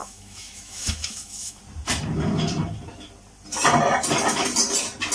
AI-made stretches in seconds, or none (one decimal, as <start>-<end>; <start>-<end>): 0.0-1.6